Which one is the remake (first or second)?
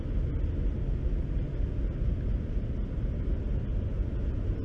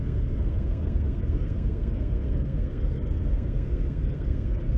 second